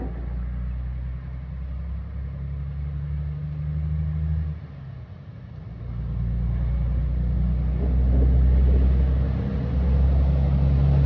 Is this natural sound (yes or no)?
yes